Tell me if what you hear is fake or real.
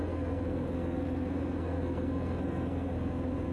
fake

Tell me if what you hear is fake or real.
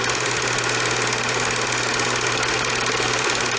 fake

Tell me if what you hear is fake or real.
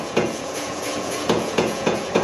fake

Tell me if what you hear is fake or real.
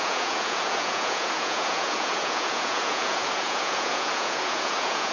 fake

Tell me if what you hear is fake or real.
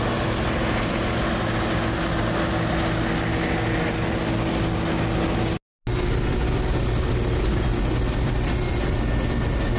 real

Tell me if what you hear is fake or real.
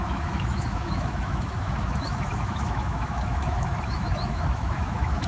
fake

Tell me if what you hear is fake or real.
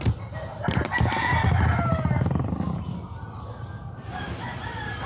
real